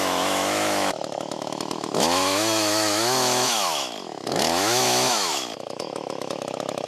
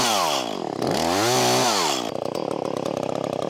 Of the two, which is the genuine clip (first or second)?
second